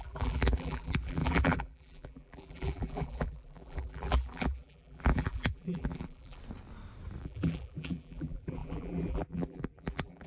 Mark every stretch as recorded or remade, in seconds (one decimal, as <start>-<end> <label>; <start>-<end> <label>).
0.0-6.4 remade; 6.4-7.2 recorded; 7.2-10.3 remade